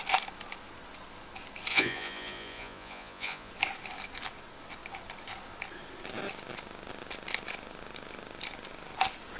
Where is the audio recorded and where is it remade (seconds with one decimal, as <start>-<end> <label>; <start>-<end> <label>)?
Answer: 0.0-1.7 recorded; 1.7-3.5 remade; 3.5-9.4 recorded